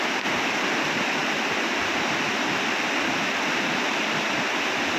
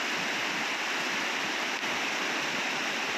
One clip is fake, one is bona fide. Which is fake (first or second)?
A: second